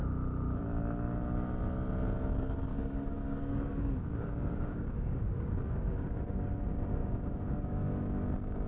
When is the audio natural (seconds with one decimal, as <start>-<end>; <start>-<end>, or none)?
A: 0.0-2.7; 6.6-7.0